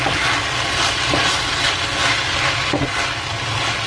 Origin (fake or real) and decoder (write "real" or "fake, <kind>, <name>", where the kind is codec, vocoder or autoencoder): real